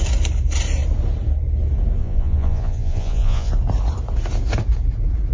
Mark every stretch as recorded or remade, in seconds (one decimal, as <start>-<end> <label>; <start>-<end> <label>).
0.0-2.0 recorded; 2.0-3.5 remade; 3.5-5.3 recorded